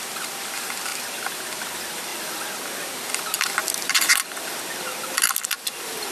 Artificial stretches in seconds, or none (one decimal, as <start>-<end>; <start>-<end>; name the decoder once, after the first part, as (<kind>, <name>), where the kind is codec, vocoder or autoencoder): 0.0-6.1 (vocoder, BigVGAN v2)

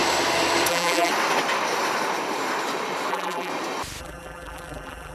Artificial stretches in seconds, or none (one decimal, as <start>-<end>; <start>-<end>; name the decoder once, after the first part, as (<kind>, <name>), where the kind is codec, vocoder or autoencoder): 0.7-1.1 (vocoder, BigVGAN v2); 3.1-3.5; 4.0-5.1

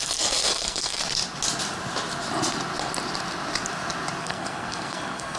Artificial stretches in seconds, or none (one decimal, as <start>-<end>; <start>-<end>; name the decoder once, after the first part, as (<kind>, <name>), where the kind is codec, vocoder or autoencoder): 0.0-1.0 (codec, SNAC); 4.2-5.4

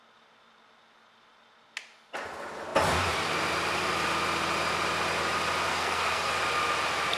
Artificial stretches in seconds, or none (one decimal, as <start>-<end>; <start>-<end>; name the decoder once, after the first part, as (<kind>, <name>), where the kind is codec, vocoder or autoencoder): 5.7-6.3 (codec, SNAC)